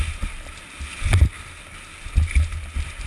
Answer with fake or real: real